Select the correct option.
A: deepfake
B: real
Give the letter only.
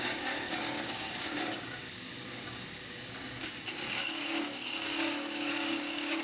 A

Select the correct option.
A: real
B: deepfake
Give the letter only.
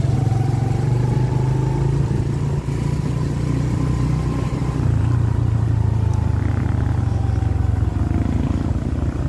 A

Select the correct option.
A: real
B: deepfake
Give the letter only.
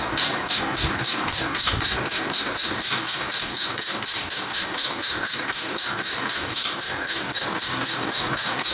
B